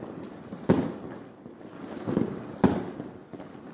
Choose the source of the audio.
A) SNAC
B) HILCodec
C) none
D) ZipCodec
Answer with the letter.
C